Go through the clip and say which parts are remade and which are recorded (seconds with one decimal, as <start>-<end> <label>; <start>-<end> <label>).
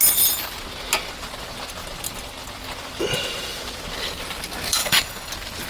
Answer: 0.0-4.8 recorded; 4.8-5.3 remade; 5.3-5.7 recorded